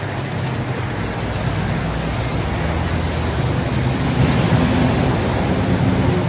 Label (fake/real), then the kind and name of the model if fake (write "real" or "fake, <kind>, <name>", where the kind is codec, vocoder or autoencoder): real